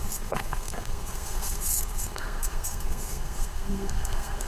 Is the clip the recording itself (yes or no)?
no